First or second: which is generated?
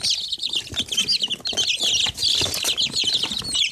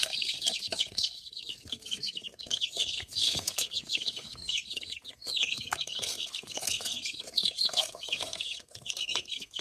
second